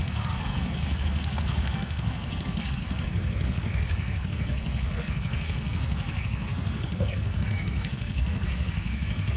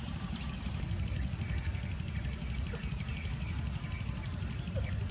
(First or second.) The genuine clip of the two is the second